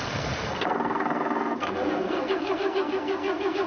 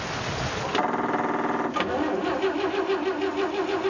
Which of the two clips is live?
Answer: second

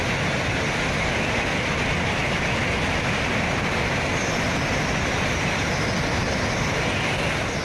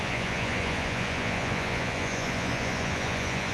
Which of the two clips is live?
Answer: first